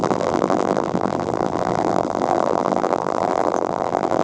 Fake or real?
fake